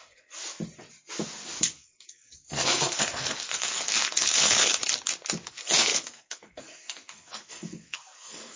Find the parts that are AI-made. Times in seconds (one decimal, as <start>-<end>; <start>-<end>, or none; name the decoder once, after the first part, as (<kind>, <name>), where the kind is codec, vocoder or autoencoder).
0.0-0.4 (codec, SNAC); 1.6-4.8; 5.5-8.6